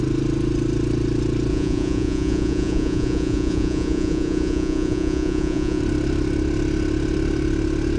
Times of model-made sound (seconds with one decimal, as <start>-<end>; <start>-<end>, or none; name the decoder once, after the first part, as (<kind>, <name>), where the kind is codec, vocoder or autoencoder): 1.5-5.8 (vocoder, Vocos)